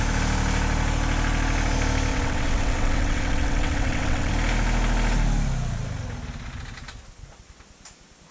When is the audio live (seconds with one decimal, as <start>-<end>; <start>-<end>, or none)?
0.0-2.1; 4.3-8.3